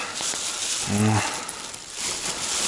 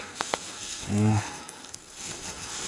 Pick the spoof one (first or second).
second